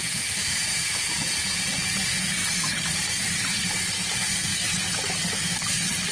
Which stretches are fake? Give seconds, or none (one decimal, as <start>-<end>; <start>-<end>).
0.0-2.4; 4.1-4.5